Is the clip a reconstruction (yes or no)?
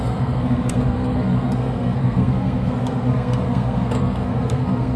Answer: yes